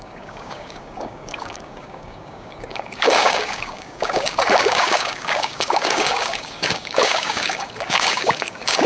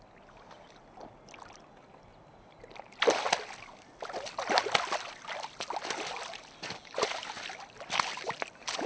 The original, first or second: second